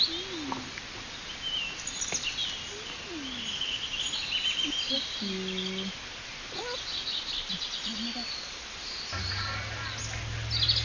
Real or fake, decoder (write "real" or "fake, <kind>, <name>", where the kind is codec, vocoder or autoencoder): real